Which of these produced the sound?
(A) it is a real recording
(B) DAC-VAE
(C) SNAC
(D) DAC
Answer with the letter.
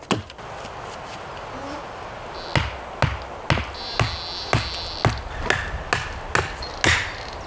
A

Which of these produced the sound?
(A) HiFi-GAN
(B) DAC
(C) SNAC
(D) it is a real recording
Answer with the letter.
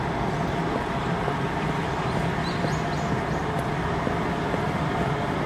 D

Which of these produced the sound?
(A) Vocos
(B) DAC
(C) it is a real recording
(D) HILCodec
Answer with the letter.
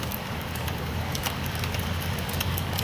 B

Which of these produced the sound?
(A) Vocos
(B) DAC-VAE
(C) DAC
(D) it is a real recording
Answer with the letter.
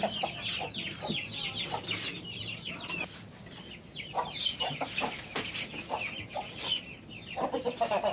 D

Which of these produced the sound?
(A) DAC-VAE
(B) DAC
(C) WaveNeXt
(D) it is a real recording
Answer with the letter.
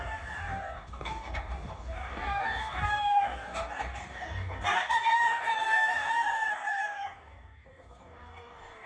B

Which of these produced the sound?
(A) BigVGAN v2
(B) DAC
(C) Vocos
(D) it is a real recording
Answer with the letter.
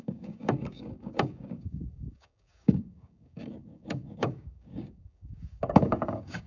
B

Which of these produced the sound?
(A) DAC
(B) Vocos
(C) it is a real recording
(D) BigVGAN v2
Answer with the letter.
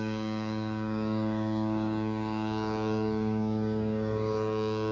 A